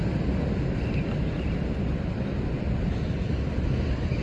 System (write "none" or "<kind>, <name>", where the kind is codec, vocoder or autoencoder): none